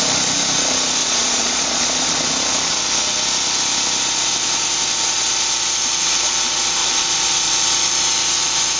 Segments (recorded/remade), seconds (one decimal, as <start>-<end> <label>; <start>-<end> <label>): 0.0-1.0 recorded; 1.0-1.9 remade; 1.9-6.8 recorded; 6.8-7.5 remade; 7.5-8.8 recorded